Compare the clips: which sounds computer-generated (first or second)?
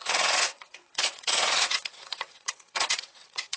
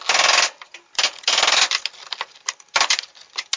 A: first